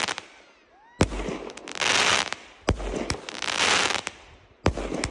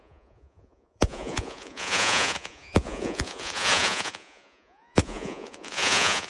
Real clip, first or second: first